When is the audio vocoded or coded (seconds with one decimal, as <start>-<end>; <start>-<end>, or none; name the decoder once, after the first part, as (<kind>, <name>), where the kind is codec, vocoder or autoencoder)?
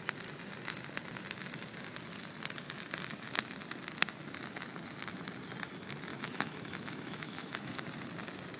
6.1-7.8 (autoencoder, DAC-VAE)